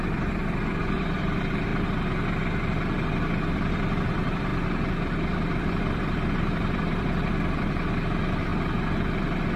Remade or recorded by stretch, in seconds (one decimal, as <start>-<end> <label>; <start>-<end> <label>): 0.0-1.7 remade; 1.7-3.5 recorded; 3.5-4.5 remade; 4.5-5.5 recorded; 5.5-8.5 remade; 8.5-9.6 recorded